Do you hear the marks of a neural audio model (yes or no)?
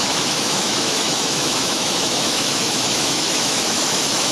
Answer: yes